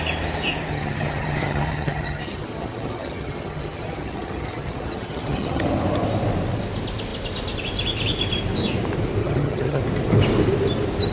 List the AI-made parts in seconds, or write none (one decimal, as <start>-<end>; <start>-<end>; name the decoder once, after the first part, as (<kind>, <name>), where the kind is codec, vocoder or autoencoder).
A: 0.7-5.6 (vocoder, HiFi-GAN); 9.2-9.8